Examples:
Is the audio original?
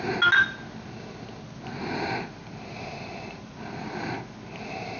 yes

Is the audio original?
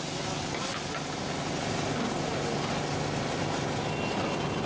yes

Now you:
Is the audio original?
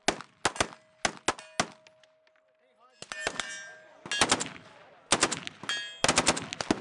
yes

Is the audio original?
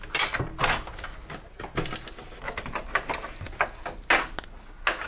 yes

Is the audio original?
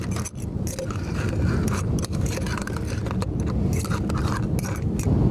yes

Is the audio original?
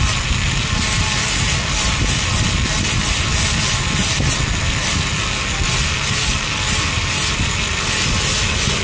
yes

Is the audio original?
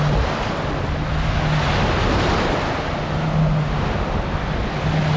yes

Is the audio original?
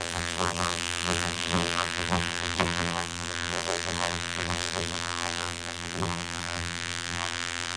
no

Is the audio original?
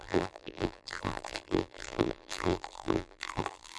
no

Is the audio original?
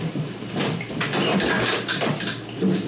yes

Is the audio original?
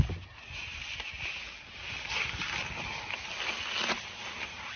yes